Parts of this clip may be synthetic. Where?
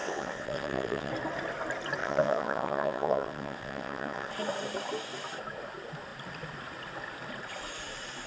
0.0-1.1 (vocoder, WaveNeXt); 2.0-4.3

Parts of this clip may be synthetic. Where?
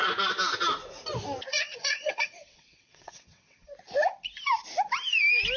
1.5-3.7 (vocoder, WaveNeXt)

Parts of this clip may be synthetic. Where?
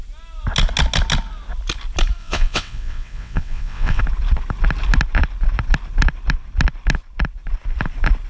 2.2-4.0 (vocoder, WaveNeXt)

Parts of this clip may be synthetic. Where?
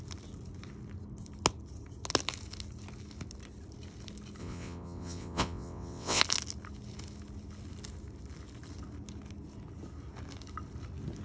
4.4-6.2 (vocoder, WaveNeXt)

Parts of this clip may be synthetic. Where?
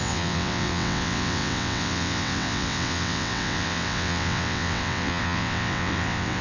0.0-6.4 (vocoder, WaveNeXt)